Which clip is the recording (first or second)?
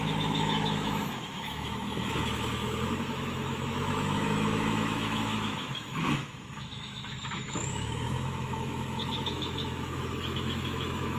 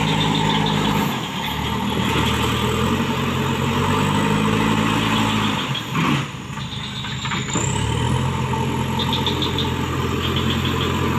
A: second